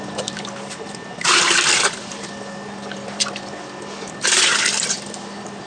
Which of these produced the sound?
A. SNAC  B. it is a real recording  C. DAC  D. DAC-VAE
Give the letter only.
B